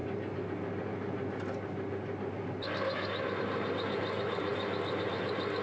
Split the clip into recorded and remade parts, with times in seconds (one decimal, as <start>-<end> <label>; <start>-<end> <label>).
0.0-5.6 recorded

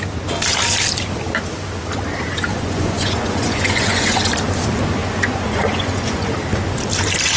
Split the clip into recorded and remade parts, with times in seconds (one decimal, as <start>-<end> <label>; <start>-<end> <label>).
0.0-2.5 recorded; 2.5-4.3 remade; 4.3-5.0 recorded; 5.0-6.3 remade; 6.3-7.4 recorded

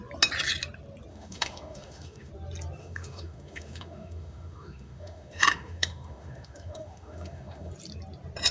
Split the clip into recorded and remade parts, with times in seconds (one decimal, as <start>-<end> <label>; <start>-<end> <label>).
0.0-1.1 recorded; 1.1-2.3 remade; 2.3-2.8 recorded; 2.8-7.7 remade; 7.7-8.5 recorded

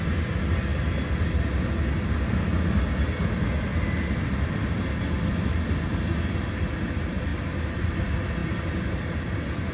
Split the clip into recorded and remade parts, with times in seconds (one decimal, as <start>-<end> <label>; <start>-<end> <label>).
0.0-7.3 recorded; 7.3-7.9 remade; 7.9-8.4 recorded; 8.4-9.2 remade; 9.2-9.7 recorded